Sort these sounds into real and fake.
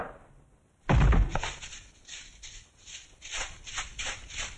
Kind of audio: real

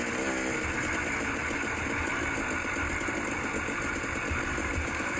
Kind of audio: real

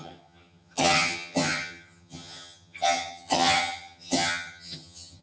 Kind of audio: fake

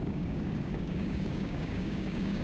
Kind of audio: fake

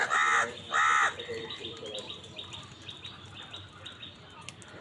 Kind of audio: real